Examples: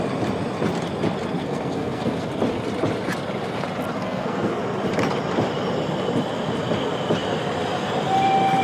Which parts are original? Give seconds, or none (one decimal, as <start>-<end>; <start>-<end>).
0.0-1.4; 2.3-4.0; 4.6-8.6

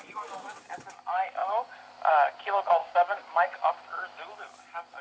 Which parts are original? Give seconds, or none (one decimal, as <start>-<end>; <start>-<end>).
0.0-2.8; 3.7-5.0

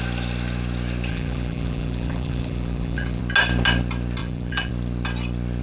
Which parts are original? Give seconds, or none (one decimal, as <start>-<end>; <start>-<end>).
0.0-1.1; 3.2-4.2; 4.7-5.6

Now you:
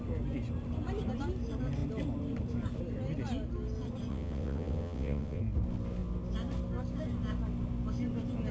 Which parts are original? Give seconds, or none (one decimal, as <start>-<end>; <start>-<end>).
0.0-4.1; 5.4-8.5

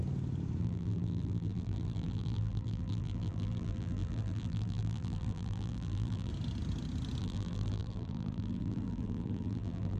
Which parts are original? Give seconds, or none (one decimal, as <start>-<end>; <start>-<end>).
0.0-0.6; 6.3-7.2

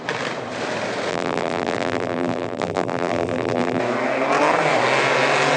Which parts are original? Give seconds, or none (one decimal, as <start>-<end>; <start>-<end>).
0.0-1.1; 3.8-5.6

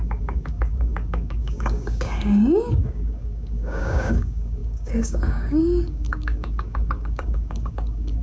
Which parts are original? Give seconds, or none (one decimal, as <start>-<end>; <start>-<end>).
none

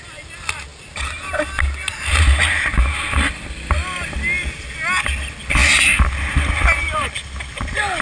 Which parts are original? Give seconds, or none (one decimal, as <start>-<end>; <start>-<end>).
0.0-8.0